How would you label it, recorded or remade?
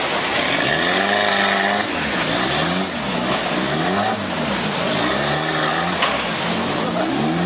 recorded